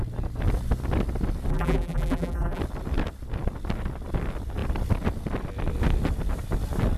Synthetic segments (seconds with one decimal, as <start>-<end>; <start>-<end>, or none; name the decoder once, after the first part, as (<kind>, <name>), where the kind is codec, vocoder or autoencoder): 1.5-2.6 (vocoder, BigVGAN v2)